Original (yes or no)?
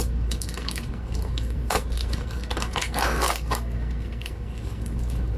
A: no